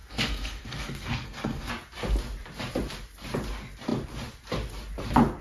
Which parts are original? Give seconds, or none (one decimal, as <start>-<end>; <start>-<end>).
1.7-5.4